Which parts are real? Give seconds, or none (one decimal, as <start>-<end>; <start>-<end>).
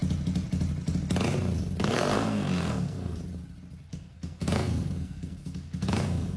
0.0-1.8; 3.2-3.9